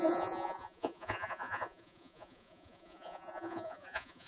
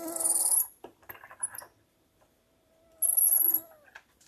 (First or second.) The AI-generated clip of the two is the first